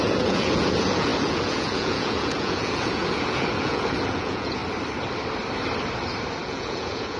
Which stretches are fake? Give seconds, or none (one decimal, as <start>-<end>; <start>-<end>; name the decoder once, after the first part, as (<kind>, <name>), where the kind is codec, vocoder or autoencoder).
0.0-4.6 (vocoder, Vocos); 6.4-7.2